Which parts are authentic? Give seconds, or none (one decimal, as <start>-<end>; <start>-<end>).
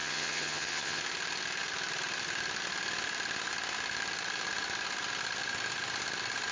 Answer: 1.0-6.5